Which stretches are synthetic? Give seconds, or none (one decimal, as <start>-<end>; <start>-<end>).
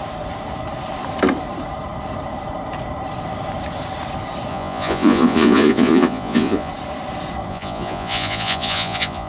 4.5-6.7; 7.5-9.3